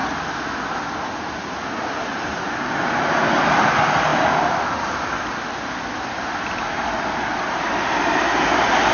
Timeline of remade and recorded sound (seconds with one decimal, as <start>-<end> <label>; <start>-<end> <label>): 0.0-8.9 recorded